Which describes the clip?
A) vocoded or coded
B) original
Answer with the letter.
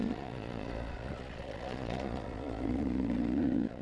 A